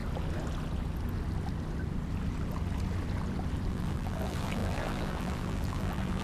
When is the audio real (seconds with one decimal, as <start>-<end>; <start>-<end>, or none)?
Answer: 0.0-3.7